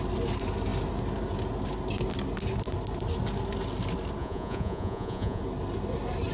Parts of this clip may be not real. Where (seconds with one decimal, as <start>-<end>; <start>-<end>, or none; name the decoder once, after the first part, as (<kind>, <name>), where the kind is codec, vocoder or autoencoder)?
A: 4.2-5.4 (vocoder, Vocos)